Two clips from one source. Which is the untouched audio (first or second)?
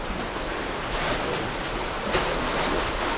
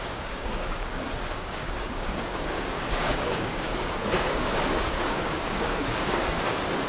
first